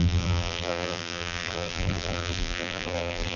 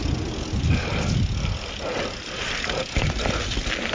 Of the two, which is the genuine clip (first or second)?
second